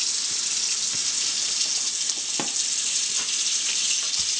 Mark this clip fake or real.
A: real